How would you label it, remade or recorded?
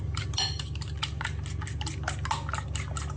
recorded